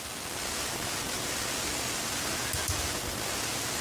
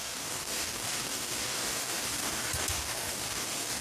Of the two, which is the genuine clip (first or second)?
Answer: first